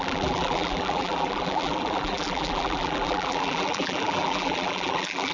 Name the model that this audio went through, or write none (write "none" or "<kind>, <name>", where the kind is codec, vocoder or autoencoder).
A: vocoder, BigVGAN v2